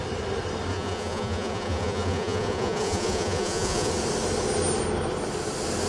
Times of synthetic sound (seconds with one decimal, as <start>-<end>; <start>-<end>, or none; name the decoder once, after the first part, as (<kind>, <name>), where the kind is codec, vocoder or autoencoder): 0.7-3.9 (vocoder, Vocos)